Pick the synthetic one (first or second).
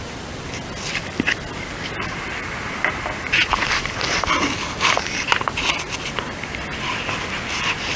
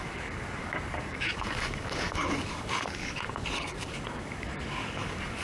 second